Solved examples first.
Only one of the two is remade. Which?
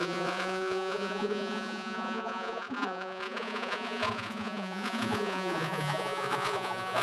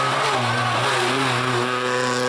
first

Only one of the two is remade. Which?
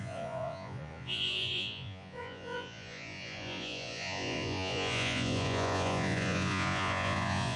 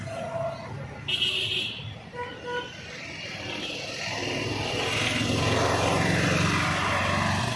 first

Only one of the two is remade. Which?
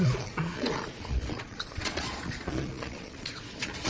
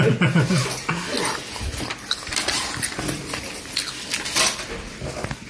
first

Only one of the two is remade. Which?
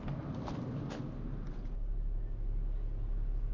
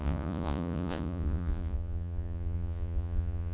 second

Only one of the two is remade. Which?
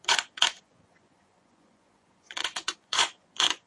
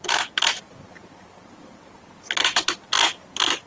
first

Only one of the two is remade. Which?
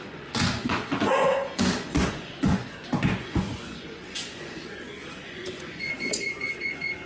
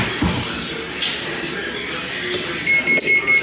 first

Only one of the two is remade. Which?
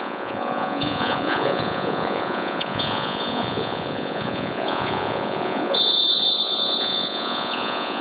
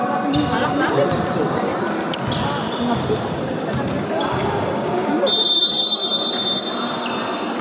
first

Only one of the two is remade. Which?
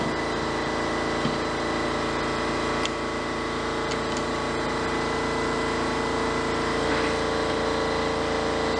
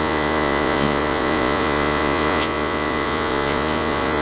second